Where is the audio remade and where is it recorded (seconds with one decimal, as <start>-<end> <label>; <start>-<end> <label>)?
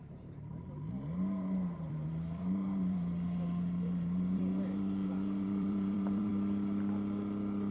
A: 0.0-6.3 remade; 6.3-7.7 recorded